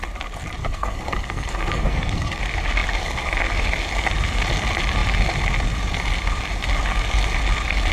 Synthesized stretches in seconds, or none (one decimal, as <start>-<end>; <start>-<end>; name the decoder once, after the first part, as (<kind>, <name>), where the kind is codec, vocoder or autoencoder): 0.6-2.4 (codec, SNAC)